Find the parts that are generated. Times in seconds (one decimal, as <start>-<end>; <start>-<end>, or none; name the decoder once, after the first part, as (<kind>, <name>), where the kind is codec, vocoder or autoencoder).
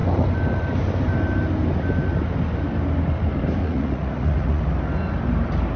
3.6-4.6 (vocoder, Vocos)